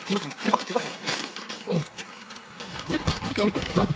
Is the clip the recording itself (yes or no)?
no